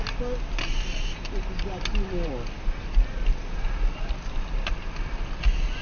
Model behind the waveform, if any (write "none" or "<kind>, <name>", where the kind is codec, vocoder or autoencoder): none